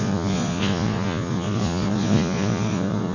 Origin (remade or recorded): remade